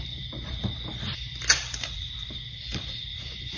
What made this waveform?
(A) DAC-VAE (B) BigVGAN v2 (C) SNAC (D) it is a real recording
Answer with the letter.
B